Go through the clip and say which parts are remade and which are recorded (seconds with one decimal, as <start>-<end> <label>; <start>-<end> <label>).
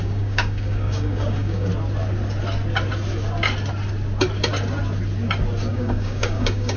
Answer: 0.0-1.7 remade; 1.7-5.7 recorded; 5.7-6.8 remade